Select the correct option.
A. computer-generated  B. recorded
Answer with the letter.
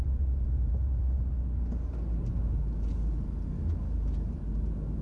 B